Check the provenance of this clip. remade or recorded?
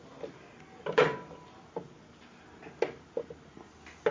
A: recorded